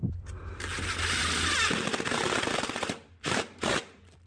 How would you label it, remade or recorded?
recorded